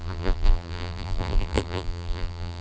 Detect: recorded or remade remade